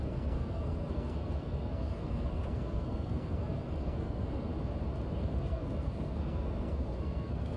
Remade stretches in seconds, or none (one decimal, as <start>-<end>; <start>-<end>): 0.0-4.5; 5.2-7.6